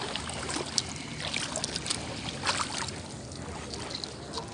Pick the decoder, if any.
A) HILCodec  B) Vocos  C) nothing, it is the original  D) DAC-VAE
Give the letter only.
C